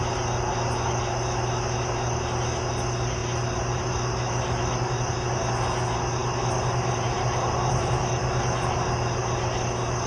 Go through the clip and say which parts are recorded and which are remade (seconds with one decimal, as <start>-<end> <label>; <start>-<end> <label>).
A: 0.0-10.1 recorded

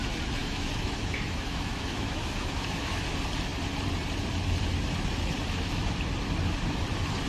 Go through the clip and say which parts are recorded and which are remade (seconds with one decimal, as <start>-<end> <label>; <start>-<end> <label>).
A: 0.0-0.4 recorded; 0.4-3.0 remade; 3.0-7.3 recorded